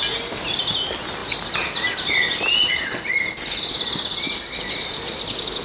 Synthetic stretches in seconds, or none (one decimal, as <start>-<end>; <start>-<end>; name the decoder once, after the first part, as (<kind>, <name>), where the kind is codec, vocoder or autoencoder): none